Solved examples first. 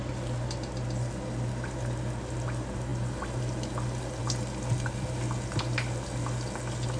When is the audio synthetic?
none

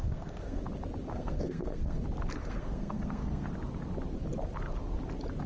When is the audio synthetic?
0.0-0.6 (codec, SNAC); 1.1-2.0; 2.4-3.5

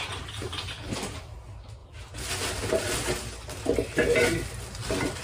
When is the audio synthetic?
none

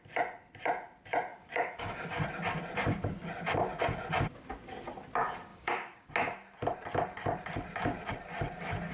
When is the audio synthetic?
1.3-2.2 (codec, DAC); 5.5-6.1